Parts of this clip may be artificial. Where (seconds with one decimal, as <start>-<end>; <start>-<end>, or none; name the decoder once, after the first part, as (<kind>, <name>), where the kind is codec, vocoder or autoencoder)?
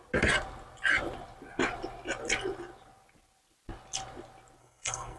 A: 4.6-5.2 (codec, SNAC)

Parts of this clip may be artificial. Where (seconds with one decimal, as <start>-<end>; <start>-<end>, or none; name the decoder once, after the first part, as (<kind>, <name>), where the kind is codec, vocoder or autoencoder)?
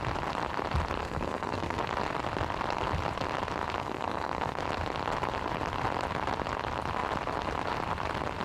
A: 1.0-1.8 (codec, SNAC); 3.8-4.6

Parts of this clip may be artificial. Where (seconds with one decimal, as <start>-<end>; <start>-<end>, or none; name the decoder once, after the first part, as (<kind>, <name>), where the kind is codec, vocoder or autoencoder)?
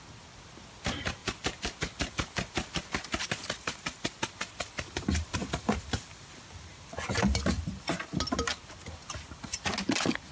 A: 1.2-6.3 (vocoder, BigVGAN v2)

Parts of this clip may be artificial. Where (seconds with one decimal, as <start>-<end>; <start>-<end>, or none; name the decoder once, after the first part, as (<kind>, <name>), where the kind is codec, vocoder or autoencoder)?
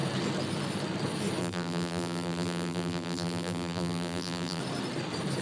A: 1.4-4.6 (vocoder, BigVGAN v2)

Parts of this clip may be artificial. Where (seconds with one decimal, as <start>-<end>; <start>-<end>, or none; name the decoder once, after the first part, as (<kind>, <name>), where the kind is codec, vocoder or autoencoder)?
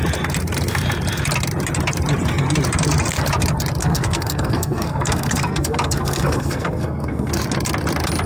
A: 3.8-7.3 (codec, SNAC)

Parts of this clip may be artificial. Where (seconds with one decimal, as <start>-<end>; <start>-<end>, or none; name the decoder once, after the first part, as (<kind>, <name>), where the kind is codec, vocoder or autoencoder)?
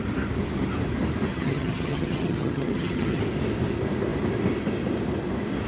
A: 1.3-3.2 (vocoder, HiFi-GAN)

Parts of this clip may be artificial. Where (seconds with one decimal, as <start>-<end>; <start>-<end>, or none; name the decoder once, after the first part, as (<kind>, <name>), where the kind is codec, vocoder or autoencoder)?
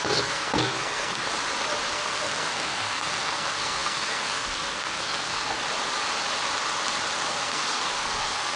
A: 0.0-1.2 (codec, SNAC); 1.9-5.6; 7.3-8.6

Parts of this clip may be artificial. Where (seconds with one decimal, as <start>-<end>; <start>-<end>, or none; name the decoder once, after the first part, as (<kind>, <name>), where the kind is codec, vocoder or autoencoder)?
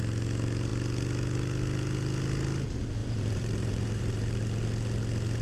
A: 3.0-4.4 (vocoder, BigVGAN v2)